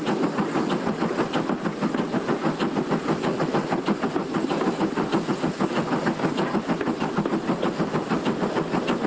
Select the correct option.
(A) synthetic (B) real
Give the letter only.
B